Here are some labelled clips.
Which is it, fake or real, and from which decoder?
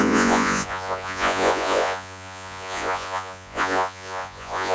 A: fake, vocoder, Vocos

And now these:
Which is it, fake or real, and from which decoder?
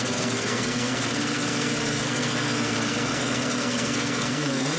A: fake, codec, SNAC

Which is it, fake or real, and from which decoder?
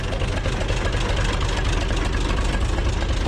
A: real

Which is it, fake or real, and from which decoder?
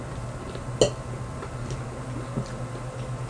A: real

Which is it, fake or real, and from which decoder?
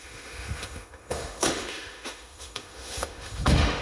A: fake, autoencoder, DAC-VAE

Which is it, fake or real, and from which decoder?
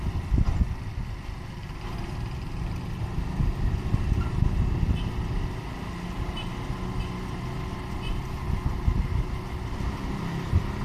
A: real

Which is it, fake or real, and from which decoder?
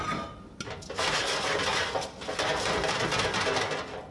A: real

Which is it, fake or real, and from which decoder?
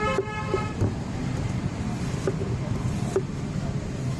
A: real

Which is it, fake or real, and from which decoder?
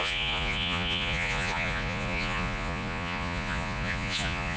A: fake, vocoder, Vocos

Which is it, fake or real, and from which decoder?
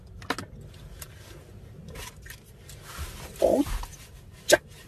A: real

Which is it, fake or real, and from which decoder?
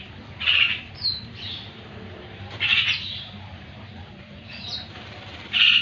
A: fake, vocoder, BigVGAN v2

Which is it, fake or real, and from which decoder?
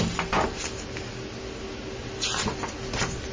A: real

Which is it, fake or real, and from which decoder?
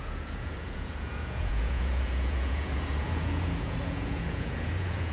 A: fake, vocoder, Vocos